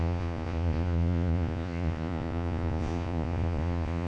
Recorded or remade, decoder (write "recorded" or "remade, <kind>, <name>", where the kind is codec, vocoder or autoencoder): remade, vocoder, Vocos